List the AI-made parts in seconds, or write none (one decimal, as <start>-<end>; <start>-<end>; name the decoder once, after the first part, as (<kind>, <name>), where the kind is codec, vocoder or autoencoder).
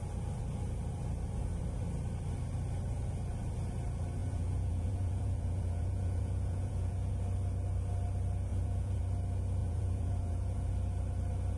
4.2-7.1 (vocoder, Vocos); 8.5-9.0; 9.6-10.7